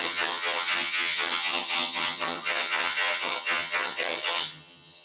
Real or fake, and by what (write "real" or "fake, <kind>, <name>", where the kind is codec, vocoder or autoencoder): fake, vocoder, HiFi-GAN